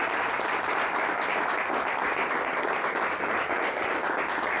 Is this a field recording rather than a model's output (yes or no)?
yes